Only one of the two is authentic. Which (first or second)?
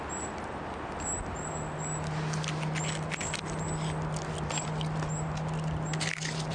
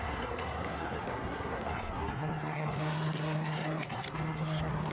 first